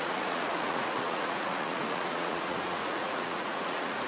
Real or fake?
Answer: fake